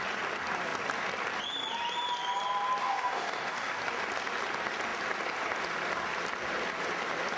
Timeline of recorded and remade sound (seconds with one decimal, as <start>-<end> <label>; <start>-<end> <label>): 0.0-2.8 recorded; 2.8-3.8 remade; 3.8-7.4 recorded